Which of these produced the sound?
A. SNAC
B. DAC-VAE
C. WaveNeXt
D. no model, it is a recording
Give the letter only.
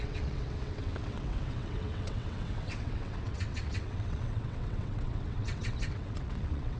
C